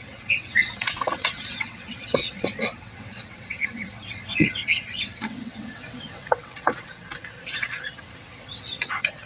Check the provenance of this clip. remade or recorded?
remade